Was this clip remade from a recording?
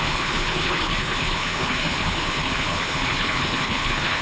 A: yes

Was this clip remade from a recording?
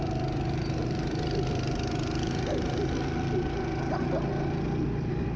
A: no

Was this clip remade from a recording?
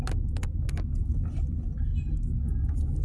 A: no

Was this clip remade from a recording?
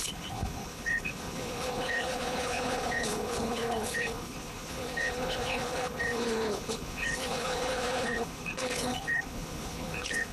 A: yes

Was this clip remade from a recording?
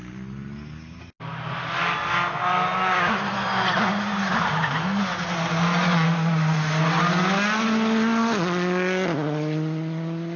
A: no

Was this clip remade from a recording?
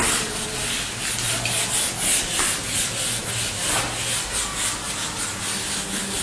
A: no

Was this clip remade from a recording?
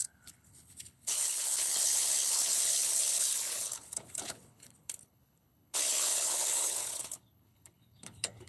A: yes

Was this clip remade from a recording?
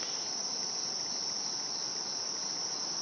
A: no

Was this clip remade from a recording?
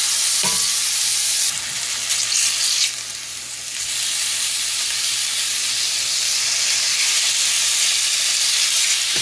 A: no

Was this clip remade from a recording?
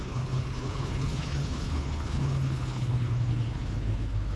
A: yes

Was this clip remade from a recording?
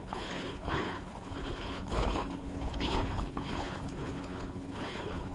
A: yes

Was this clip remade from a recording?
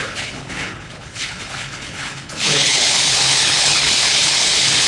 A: yes